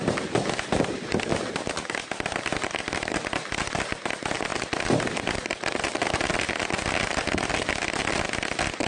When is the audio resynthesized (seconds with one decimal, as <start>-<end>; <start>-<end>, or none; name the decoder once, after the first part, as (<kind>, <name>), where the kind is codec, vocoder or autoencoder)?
none